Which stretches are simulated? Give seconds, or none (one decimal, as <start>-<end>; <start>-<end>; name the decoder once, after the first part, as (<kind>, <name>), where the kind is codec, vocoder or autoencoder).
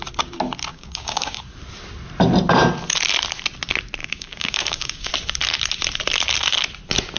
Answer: 0.7-1.4 (codec, DAC); 4.0-5.1